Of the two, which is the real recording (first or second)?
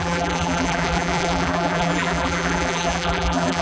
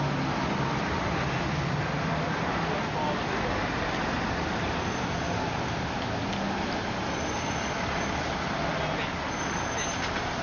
second